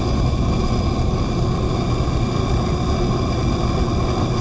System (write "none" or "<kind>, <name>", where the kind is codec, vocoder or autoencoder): none